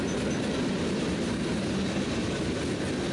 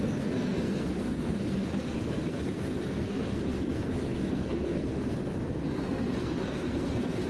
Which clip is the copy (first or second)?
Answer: second